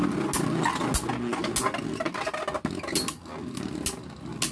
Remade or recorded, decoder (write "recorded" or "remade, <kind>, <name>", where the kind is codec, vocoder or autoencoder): recorded